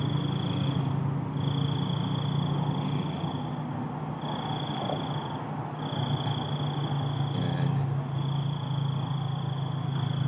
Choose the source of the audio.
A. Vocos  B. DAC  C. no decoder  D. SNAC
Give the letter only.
C